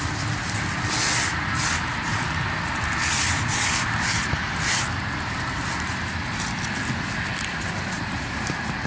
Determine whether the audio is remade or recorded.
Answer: recorded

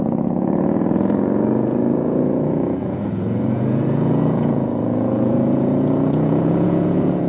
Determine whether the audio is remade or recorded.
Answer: remade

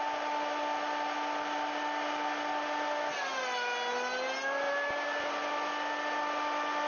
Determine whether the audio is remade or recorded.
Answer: recorded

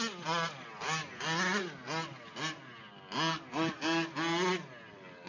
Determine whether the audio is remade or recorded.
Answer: recorded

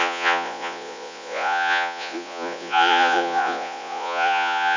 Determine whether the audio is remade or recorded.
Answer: remade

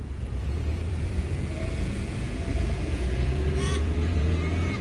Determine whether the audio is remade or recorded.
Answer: remade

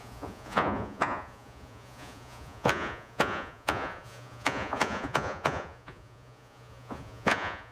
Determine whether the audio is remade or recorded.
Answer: remade